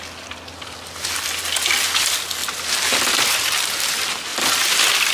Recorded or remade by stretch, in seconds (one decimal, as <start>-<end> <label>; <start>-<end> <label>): 0.0-5.1 recorded